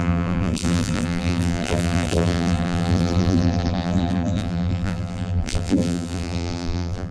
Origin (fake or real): fake